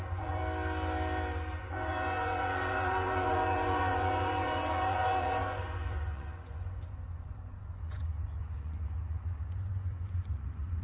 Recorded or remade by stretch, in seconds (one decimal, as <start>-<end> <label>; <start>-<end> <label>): 0.0-0.4 remade; 0.4-1.6 recorded; 1.6-10.8 remade